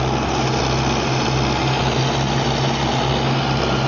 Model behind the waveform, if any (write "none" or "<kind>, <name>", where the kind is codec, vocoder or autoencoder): none